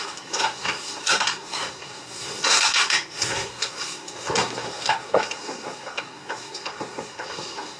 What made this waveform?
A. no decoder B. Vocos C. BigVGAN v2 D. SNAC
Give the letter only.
D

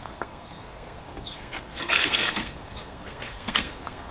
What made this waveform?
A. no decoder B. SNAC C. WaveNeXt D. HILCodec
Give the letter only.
B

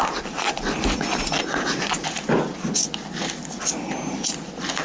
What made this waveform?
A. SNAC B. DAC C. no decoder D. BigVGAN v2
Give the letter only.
C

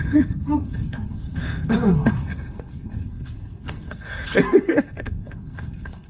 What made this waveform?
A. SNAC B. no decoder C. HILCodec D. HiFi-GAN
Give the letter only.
A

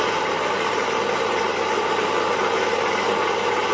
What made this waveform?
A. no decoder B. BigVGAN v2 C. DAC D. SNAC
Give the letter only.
A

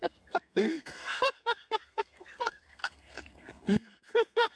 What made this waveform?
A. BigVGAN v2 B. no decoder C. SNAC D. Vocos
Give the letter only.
C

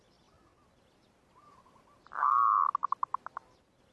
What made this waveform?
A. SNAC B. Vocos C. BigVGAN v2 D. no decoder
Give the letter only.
D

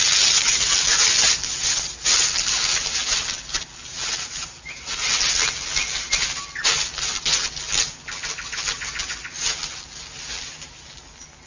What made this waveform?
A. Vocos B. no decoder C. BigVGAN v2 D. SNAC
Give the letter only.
B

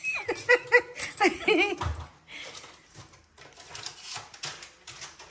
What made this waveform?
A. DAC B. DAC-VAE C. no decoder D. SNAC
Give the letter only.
C